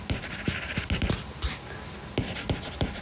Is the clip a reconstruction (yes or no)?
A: no